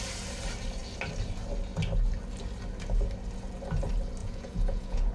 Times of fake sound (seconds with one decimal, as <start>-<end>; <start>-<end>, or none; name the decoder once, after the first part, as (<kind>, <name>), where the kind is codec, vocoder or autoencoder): 4.2-5.1 (vocoder, Vocos)